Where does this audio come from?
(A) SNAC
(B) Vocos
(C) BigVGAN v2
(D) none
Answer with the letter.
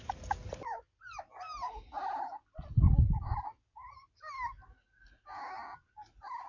D